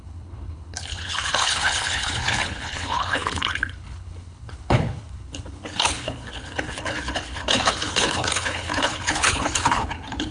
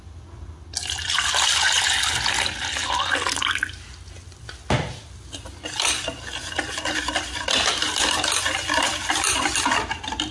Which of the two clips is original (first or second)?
second